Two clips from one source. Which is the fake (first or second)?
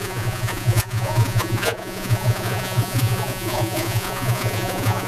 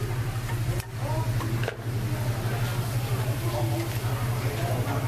first